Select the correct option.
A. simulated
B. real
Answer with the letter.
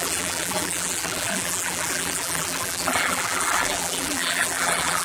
A